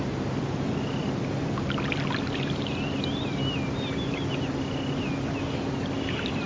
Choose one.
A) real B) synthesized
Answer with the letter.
A